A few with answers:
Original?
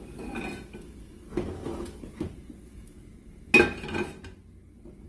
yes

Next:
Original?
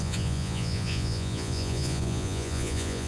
no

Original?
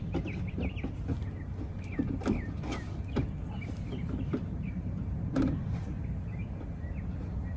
yes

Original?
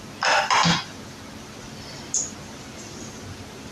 yes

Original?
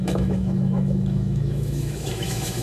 no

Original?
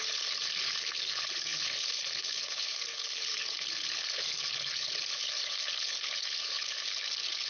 no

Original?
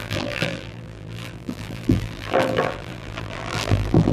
no